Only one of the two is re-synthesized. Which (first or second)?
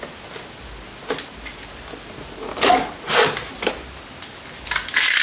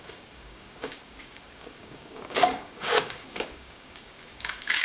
second